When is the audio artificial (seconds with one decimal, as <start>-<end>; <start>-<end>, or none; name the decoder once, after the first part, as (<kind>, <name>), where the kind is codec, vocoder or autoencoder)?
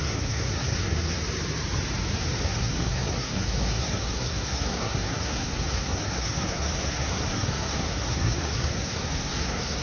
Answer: 0.0-1.2 (codec, SNAC); 2.4-9.8